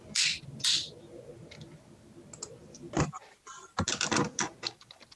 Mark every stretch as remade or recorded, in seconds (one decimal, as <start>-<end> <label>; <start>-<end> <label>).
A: 0.0-5.2 recorded